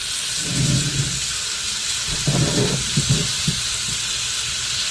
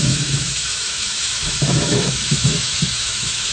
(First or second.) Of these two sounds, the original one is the first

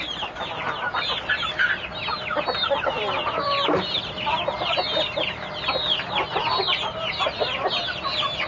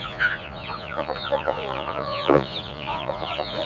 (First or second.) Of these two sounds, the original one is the first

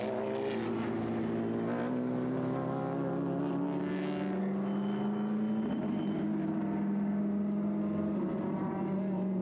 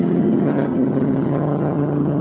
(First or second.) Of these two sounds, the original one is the first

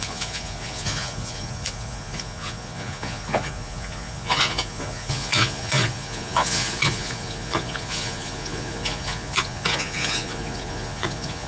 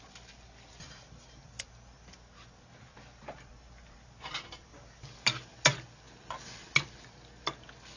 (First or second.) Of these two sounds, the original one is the second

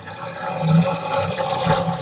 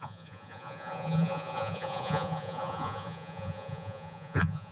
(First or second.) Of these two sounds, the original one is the first